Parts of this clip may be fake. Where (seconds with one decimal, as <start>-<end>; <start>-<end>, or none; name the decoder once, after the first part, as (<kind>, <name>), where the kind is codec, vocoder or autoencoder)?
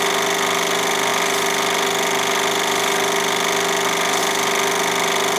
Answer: none